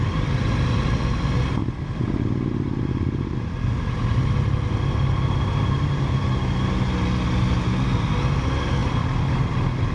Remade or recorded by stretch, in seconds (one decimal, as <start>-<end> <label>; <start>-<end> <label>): 0.0-9.9 recorded